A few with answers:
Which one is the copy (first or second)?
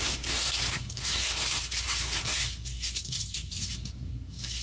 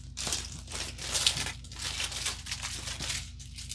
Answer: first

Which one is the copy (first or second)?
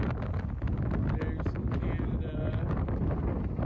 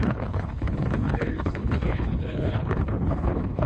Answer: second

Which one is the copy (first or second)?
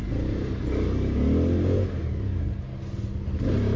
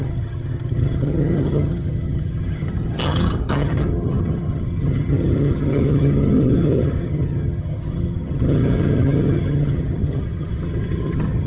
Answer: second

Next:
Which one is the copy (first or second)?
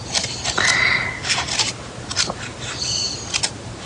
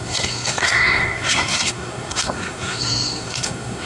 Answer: second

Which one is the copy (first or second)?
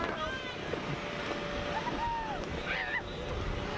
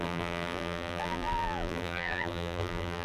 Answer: second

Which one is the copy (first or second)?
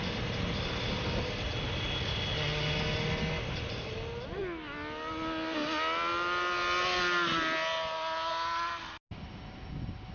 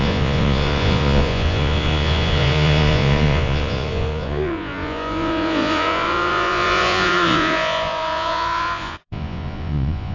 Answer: second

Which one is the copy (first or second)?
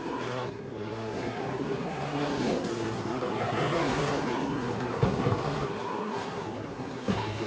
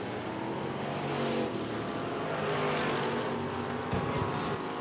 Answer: first